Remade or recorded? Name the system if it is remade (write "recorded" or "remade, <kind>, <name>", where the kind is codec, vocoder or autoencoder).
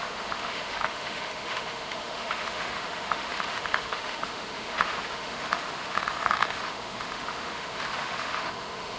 remade, autoencoder, DAC-VAE